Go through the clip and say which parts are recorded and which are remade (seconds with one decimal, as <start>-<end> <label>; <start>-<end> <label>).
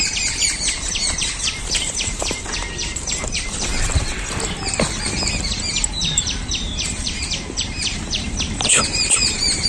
0.0-3.7 remade; 3.7-5.7 recorded; 5.7-9.7 remade